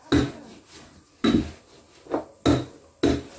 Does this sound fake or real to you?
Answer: real